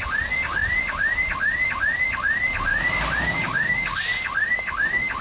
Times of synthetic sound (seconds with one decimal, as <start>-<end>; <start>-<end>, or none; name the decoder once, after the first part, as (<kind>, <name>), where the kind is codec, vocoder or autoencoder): 2.7-4.0 (codec, DAC)